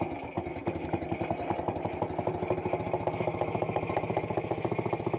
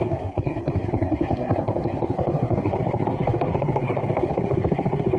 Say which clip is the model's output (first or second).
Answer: second